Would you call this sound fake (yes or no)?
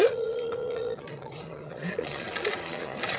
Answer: yes